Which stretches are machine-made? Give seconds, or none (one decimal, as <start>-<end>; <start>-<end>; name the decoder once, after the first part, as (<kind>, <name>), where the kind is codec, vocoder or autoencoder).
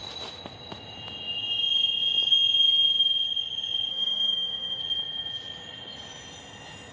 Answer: 3.9-4.8 (autoencoder, DAC-VAE)